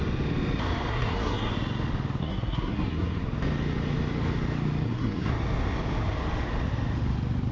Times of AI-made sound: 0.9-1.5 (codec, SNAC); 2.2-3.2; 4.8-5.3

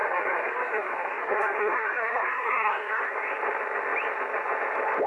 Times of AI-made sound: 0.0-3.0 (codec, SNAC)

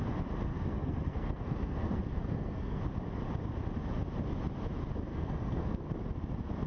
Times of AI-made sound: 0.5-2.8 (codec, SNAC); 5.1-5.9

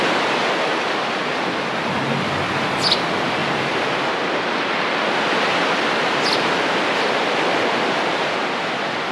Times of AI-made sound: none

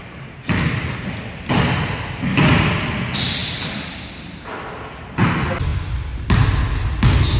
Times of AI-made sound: none